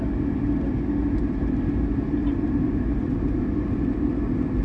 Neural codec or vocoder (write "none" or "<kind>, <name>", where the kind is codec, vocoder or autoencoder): none